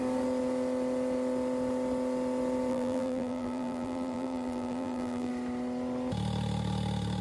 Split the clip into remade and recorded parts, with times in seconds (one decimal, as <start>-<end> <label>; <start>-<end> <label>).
0.0-2.7 recorded; 2.7-5.3 remade; 5.3-7.2 recorded

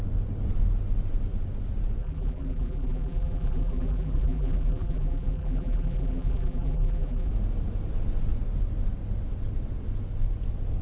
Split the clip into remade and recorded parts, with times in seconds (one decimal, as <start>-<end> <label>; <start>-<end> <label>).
0.0-2.0 recorded; 2.0-7.3 remade; 7.3-10.8 recorded

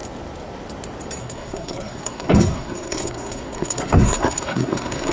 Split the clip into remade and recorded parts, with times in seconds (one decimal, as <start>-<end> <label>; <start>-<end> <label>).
0.0-1.2 recorded; 1.2-5.1 remade

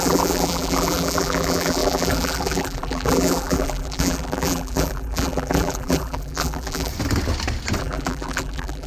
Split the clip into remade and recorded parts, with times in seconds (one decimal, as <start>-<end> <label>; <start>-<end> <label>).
0.0-6.9 remade; 6.9-7.8 recorded; 7.8-8.9 remade

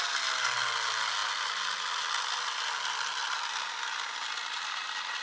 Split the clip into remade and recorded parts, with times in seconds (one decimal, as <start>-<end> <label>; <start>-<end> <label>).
0.0-5.2 recorded

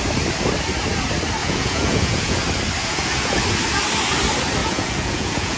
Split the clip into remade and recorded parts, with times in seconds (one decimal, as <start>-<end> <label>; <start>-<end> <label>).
0.0-1.4 recorded; 1.4-2.4 remade; 2.4-2.8 recorded; 2.8-3.4 remade; 3.4-4.6 recorded; 4.6-5.6 remade

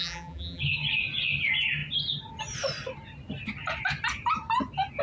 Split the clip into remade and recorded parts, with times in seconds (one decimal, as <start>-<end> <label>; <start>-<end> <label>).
0.0-0.6 remade; 0.6-5.0 recorded